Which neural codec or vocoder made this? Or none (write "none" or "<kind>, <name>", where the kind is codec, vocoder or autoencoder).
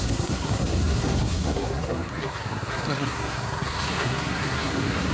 codec, SNAC